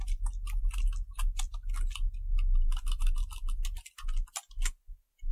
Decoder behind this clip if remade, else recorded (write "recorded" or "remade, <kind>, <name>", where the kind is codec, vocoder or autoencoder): recorded